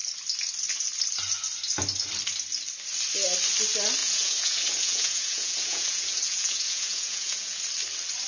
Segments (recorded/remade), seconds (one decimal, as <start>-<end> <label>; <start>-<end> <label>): 0.0-4.0 recorded; 4.0-7.6 remade; 7.6-8.3 recorded